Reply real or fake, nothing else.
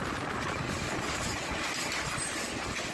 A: real